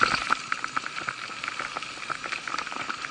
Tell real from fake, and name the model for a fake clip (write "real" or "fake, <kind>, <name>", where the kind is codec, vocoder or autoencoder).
real